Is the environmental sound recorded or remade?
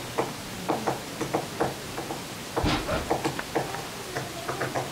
recorded